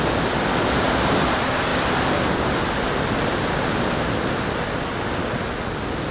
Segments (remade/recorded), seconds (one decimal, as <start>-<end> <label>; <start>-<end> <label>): 0.0-6.1 recorded